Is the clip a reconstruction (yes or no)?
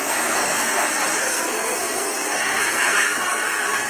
yes